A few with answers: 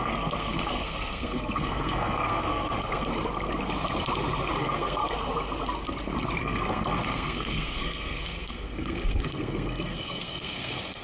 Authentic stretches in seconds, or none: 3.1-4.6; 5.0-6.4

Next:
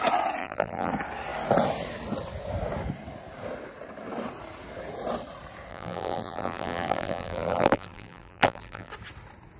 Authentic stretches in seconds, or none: 0.0-0.4; 0.9-5.7; 8.9-9.6

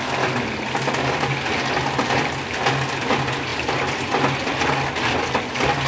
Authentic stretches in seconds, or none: 0.0-5.9

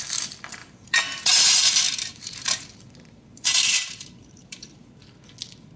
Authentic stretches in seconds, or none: 0.0-0.6; 2.8-3.3; 5.0-5.8

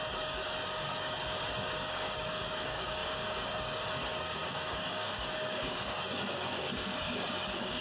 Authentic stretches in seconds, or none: none

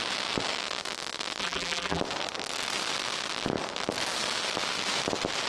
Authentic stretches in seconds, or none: 0.0-1.4; 2.0-5.5

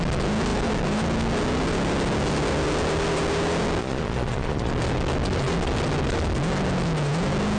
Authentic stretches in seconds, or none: 0.0-3.8; 4.7-7.6

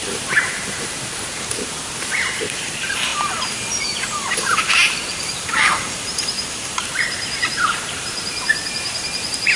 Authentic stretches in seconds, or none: none